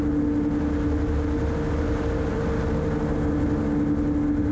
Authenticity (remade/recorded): recorded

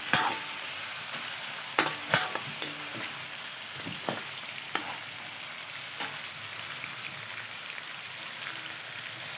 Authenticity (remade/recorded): recorded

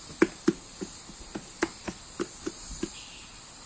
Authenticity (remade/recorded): recorded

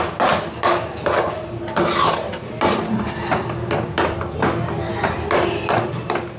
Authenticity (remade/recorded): recorded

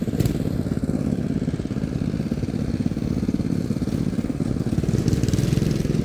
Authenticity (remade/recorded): remade